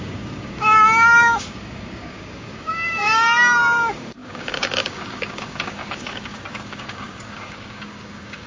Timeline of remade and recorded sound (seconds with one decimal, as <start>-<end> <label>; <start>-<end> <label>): 0.0-8.5 remade